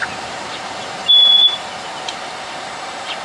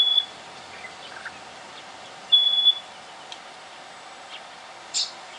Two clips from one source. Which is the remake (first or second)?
first